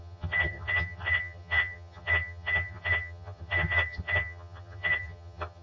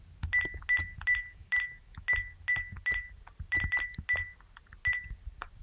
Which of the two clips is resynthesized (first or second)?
first